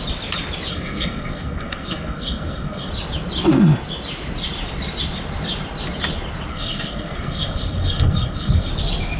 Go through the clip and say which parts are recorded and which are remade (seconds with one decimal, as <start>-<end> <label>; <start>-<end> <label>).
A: 0.0-0.7 recorded; 0.7-2.9 remade; 2.9-6.5 recorded; 6.5-8.7 remade; 8.7-9.2 recorded

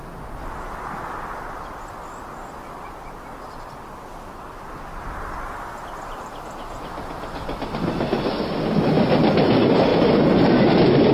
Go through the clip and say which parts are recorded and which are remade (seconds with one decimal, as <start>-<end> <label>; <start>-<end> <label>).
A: 0.0-11.1 recorded